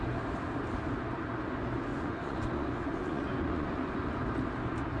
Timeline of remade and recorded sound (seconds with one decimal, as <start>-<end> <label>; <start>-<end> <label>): 0.0-1.9 recorded; 1.9-4.2 remade; 4.2-5.0 recorded